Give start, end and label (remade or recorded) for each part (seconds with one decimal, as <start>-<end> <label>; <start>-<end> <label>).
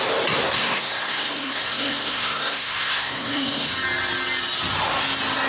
0.0-0.4 recorded; 0.4-3.7 remade; 3.7-5.5 recorded